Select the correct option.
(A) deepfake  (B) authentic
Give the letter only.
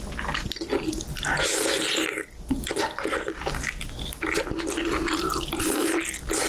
B